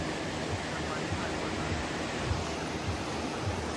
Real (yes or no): yes